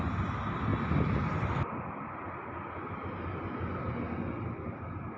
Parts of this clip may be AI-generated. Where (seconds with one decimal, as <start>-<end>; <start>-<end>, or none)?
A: none